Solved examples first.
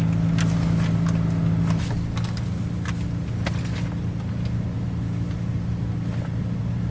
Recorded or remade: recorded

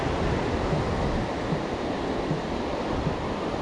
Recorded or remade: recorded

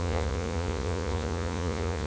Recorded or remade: remade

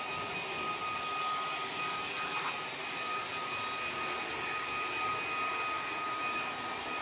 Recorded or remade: recorded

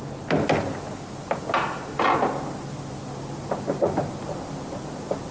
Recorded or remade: recorded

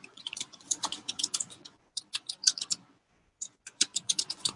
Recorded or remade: remade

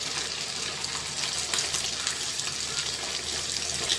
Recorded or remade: recorded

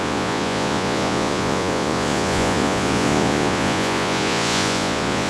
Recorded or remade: remade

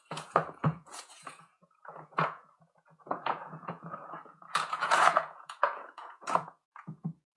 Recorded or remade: remade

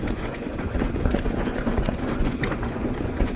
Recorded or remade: remade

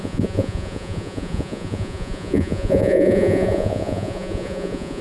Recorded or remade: remade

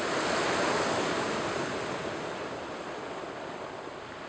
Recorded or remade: recorded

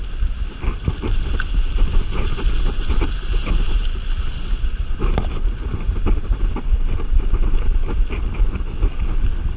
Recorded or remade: recorded